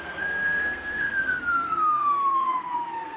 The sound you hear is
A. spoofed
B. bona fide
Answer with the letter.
A